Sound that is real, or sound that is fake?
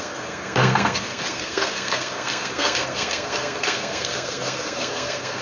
fake